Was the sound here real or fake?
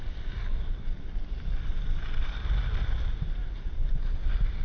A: real